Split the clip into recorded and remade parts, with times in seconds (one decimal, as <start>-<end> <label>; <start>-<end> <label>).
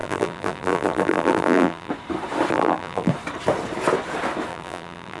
0.0-1.9 remade; 1.9-2.5 recorded; 2.5-3.1 remade; 3.1-4.5 recorded; 4.5-5.2 remade